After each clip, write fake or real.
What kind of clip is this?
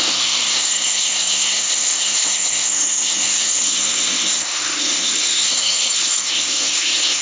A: fake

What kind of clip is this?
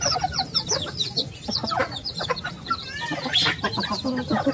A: real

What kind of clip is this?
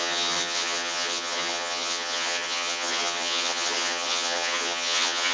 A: fake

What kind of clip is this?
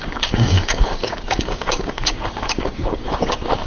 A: fake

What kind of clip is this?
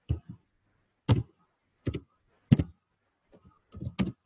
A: real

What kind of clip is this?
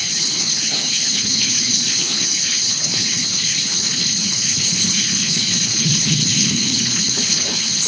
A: fake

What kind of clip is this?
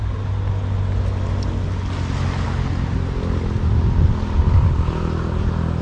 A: real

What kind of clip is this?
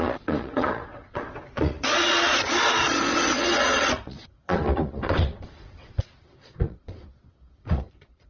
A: fake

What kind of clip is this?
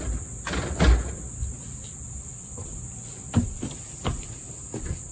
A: real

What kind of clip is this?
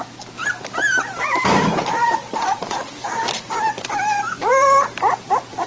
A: fake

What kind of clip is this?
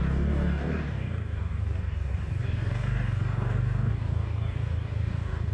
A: fake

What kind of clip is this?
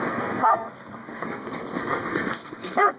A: fake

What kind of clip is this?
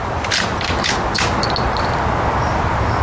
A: real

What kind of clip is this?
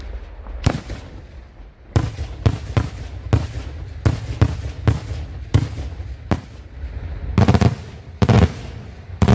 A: real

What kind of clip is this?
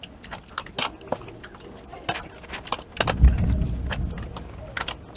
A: real